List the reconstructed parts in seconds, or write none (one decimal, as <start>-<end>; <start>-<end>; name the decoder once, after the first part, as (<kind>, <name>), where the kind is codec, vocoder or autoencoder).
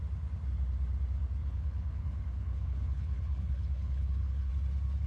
1.4-4.5 (codec, HILCodec)